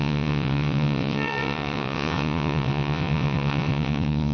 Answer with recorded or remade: remade